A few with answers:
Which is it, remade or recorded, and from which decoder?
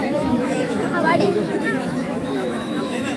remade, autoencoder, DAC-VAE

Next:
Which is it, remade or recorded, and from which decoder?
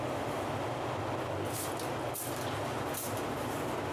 recorded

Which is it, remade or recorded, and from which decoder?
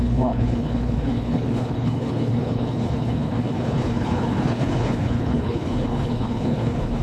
remade, codec, HILCodec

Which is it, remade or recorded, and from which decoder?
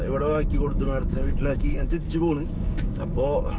remade, codec, DAC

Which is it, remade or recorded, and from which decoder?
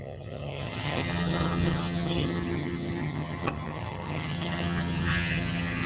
remade, vocoder, HiFi-GAN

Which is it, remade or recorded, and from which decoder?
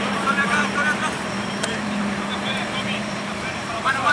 remade, vocoder, BigVGAN v2